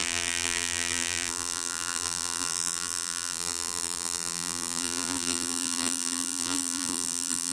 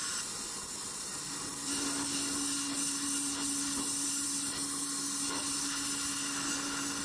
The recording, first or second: second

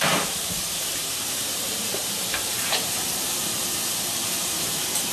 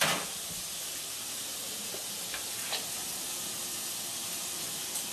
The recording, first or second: second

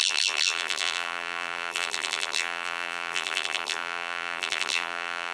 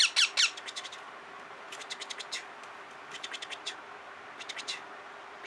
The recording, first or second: second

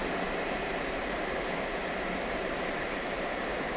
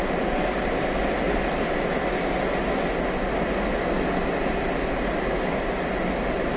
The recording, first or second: second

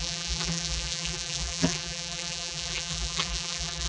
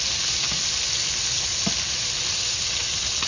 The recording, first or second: second